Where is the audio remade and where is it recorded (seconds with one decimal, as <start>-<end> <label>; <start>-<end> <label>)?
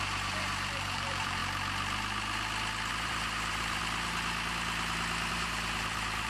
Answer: 0.0-1.4 remade; 1.4-2.9 recorded; 2.9-3.8 remade; 3.8-5.3 recorded; 5.3-6.3 remade